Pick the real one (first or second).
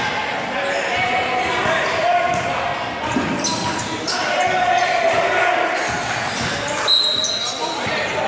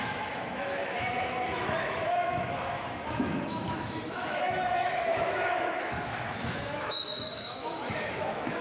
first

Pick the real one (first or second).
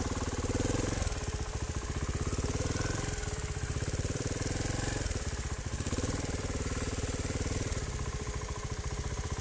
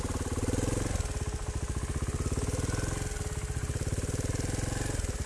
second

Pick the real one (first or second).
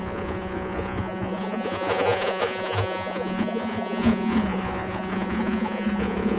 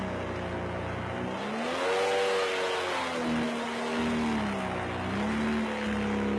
second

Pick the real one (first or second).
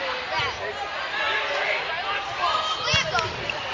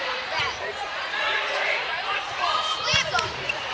first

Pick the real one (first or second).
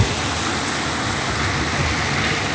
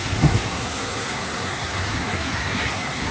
first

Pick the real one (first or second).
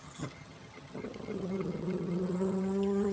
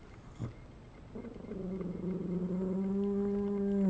second